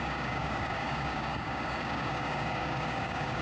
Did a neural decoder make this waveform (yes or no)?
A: yes